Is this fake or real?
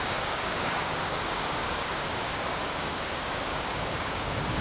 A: fake